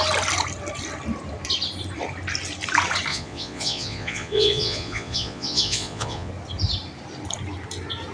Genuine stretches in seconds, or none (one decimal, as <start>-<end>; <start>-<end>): 0.0-3.1; 6.3-8.1